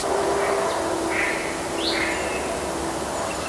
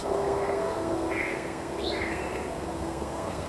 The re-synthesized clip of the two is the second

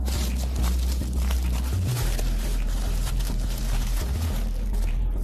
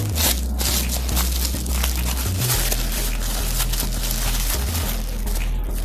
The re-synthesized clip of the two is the first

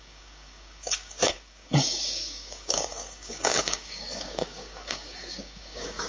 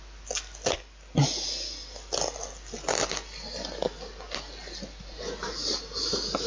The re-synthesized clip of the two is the first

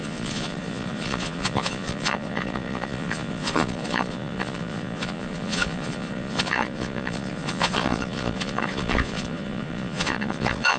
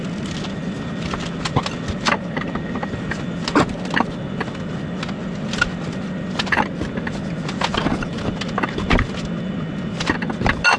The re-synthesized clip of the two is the first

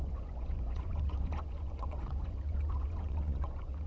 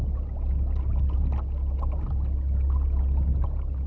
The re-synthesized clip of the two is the first